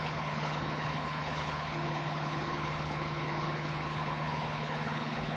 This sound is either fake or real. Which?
fake